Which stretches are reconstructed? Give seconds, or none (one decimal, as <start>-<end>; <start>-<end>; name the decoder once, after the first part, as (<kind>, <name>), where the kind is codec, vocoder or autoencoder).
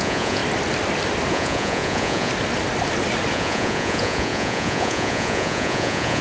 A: 0.0-0.4 (vocoder, Vocos); 1.3-2.3; 3.3-6.2